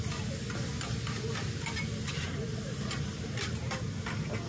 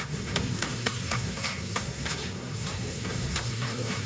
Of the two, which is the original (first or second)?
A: first